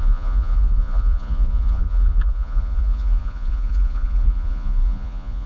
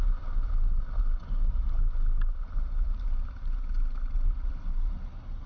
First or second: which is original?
second